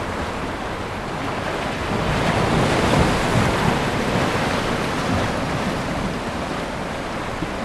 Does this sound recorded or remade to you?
recorded